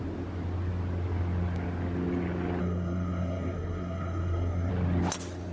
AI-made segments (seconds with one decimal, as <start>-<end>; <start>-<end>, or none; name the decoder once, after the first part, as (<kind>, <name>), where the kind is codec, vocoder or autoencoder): 2.6-4.7 (codec, SNAC)